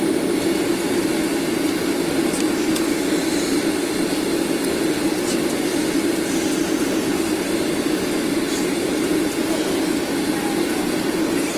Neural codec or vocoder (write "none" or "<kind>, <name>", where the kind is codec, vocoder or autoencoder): none